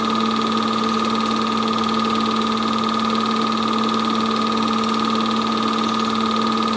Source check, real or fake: real